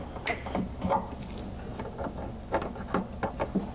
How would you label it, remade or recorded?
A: recorded